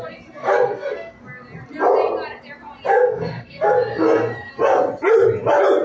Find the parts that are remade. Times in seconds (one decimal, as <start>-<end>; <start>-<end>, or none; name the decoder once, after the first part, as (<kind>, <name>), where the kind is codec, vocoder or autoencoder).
0.4-1.2 (codec, SNAC); 2.9-4.5